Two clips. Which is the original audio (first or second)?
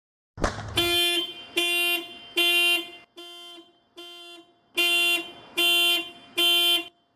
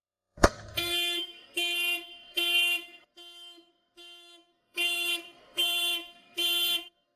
first